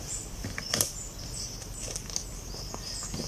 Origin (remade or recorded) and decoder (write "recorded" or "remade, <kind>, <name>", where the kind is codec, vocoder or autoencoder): recorded